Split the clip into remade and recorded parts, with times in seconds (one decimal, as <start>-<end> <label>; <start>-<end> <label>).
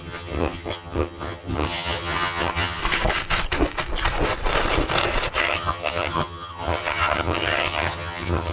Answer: 0.0-2.8 remade; 2.8-5.4 recorded; 5.4-8.5 remade